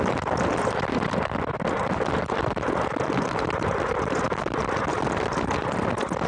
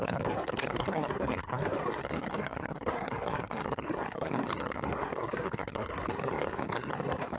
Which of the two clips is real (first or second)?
first